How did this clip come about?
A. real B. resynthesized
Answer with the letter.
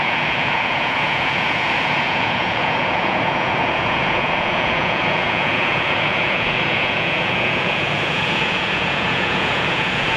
B